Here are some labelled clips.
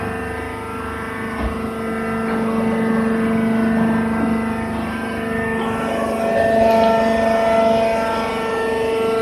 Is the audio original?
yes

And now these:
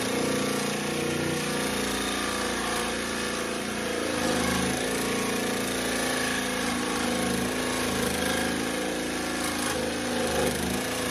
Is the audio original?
yes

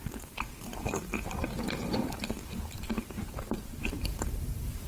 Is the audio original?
no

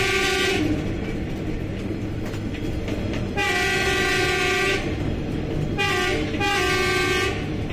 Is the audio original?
yes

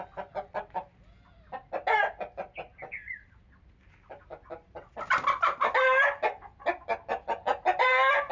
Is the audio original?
yes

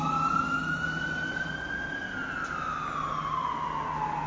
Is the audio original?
yes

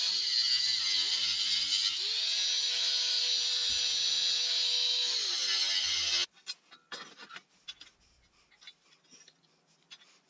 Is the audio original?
yes